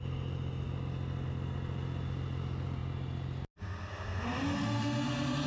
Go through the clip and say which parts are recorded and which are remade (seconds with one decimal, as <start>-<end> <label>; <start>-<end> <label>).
0.0-5.5 recorded

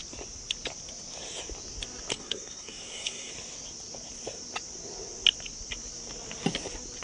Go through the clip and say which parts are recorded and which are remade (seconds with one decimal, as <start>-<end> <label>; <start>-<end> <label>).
0.0-2.1 recorded; 2.1-3.3 remade; 3.3-7.0 recorded

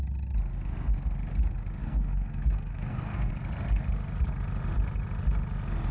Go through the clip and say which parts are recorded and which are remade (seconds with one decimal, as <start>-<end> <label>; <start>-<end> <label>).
0.0-1.8 recorded; 1.8-3.3 remade; 3.3-5.9 recorded

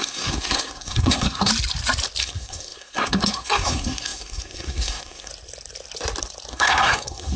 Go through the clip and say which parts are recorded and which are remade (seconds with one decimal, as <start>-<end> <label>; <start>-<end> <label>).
0.0-1.5 remade; 1.5-2.2 recorded; 2.2-5.3 remade; 5.3-6.5 recorded; 6.5-7.4 remade

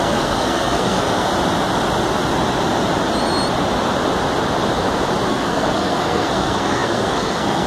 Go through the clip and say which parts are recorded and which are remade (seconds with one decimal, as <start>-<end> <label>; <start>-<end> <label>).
0.0-1.3 remade; 1.3-5.3 recorded; 5.3-7.7 remade